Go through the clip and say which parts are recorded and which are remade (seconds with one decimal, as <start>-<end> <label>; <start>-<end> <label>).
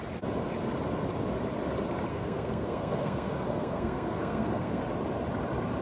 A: 0.0-2.1 recorded; 2.1-4.8 remade; 4.8-5.8 recorded